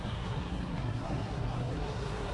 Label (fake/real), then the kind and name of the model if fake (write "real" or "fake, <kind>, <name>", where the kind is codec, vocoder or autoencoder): fake, codec, SNAC